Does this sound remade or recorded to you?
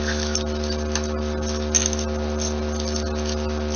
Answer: recorded